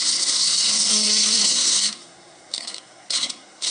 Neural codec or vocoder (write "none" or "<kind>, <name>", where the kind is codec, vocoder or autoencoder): codec, SNAC